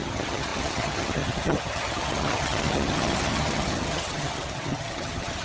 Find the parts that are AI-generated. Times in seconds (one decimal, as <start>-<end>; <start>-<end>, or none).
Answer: 0.0-5.4